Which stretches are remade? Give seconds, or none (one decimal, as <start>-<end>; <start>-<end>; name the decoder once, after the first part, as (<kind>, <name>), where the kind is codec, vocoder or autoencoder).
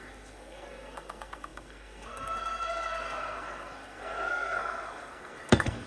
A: 0.0-5.9 (codec, SNAC)